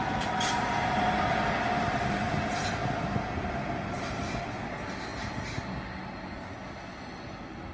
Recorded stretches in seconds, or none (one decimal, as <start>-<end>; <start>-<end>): 0.0-7.7